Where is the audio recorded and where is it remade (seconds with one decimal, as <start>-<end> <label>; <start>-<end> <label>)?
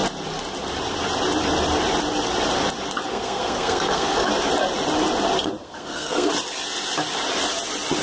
0.0-3.1 recorded; 3.1-4.3 remade; 4.3-5.6 recorded; 5.6-6.3 remade; 6.3-8.0 recorded